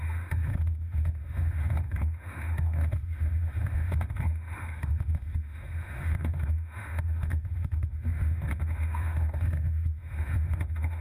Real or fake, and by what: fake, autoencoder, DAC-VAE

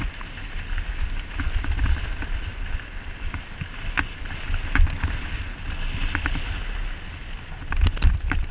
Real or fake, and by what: real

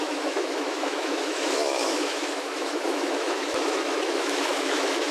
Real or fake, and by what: fake, autoencoder, DAC-VAE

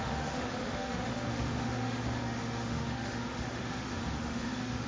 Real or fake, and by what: fake, autoencoder, DAC-VAE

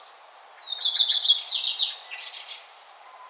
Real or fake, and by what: real